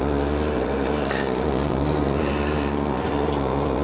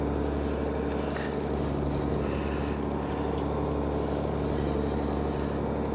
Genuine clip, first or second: second